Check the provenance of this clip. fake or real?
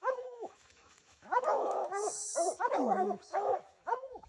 fake